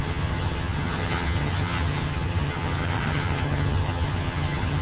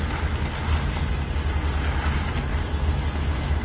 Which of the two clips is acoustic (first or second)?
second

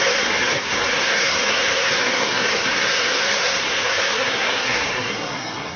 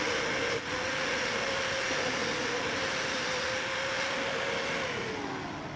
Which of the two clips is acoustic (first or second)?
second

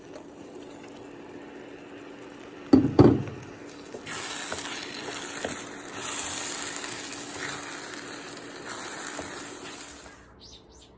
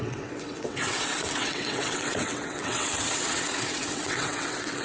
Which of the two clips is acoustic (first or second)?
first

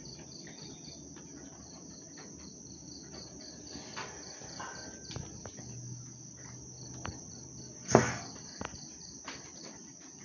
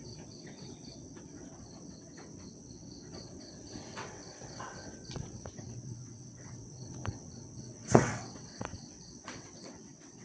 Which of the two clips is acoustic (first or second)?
first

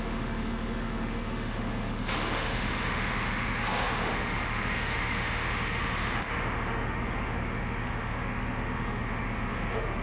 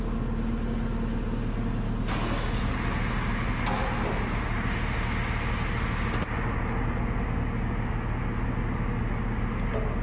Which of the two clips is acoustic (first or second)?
second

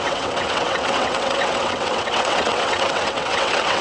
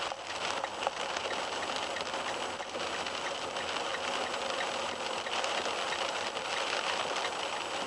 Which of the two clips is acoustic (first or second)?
second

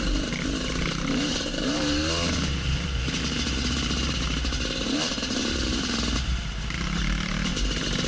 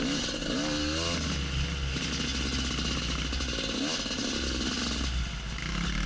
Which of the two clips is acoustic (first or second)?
second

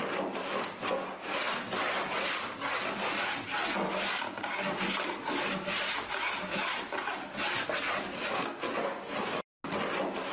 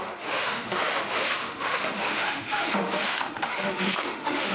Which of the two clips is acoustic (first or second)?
first